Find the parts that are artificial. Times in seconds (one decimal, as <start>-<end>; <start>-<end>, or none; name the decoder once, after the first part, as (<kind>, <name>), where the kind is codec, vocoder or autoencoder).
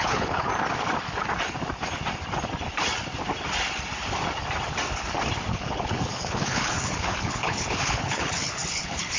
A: 0.0-0.5 (codec, HILCodec); 5.5-9.2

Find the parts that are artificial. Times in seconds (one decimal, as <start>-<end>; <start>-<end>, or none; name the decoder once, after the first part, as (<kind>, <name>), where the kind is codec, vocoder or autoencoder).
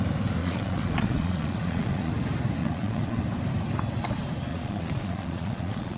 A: 0.4-2.1 (vocoder, Vocos); 2.6-3.2; 4.5-6.0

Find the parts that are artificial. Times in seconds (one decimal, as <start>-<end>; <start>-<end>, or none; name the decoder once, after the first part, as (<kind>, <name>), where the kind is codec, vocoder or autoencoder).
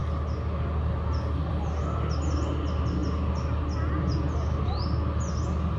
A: none